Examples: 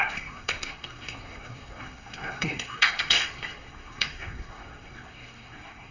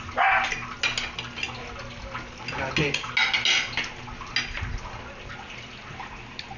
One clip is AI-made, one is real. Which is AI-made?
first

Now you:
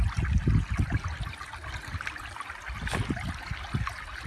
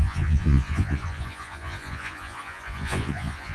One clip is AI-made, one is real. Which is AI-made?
second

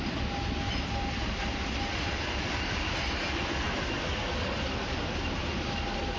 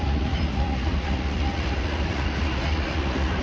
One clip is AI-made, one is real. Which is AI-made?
second